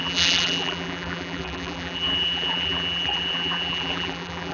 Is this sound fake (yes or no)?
yes